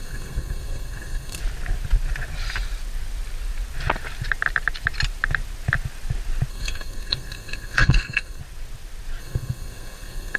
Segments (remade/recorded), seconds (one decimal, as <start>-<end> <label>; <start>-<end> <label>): 0.0-1.4 remade; 1.4-6.5 recorded; 6.5-8.4 remade; 8.4-9.2 recorded; 9.2-10.4 remade